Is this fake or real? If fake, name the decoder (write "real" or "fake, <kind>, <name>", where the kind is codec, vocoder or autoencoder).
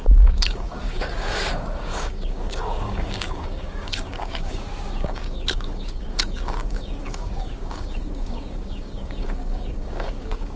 fake, codec, DAC